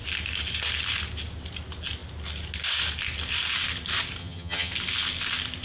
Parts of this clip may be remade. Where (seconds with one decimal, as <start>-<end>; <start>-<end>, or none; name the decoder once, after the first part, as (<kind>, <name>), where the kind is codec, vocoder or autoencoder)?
4.2-4.7 (vocoder, HiFi-GAN)